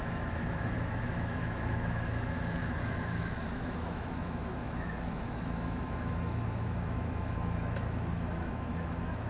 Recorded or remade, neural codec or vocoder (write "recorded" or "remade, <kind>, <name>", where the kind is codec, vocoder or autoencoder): remade, autoencoder, DAC-VAE